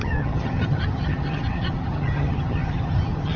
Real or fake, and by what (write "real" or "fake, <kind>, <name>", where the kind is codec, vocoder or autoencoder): fake, vocoder, HiFi-GAN